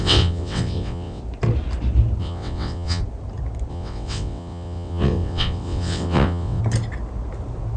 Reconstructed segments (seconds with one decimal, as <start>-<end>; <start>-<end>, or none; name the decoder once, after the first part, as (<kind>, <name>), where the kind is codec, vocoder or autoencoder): 0.0-1.2 (vocoder, WaveNeXt); 2.2-3.0; 3.7-6.6